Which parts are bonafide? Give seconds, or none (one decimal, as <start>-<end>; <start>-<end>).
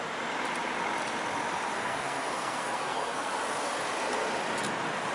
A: 0.0-1.7; 3.3-5.1